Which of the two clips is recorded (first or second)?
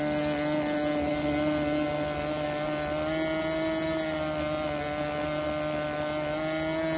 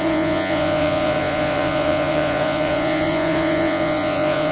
first